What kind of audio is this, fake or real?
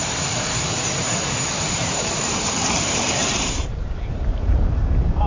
fake